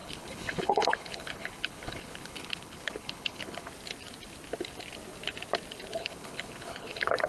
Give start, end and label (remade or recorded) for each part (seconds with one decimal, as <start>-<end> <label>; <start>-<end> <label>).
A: 0.0-3.7 remade; 3.7-6.0 recorded; 6.0-7.3 remade